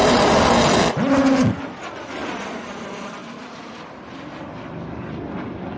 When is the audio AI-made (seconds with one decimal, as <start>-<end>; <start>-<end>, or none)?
none